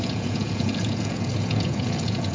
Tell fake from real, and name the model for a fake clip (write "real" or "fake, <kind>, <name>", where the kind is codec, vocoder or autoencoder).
fake, vocoder, Vocos